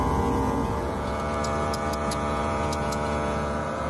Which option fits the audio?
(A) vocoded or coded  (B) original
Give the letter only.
A